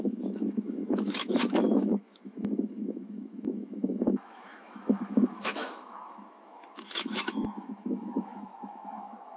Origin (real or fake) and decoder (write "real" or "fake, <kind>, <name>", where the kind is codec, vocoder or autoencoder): fake, autoencoder, DAC-VAE